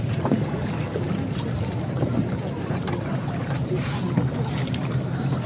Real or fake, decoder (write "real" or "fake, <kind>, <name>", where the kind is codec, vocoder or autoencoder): fake, vocoder, BigVGAN v2